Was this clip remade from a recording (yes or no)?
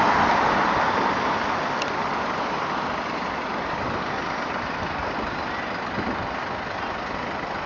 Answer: no